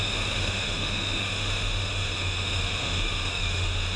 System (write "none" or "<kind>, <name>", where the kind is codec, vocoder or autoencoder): autoencoder, DAC-VAE